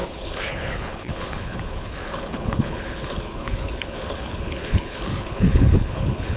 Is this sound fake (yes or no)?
yes